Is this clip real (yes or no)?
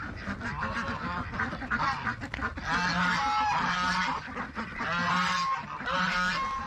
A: yes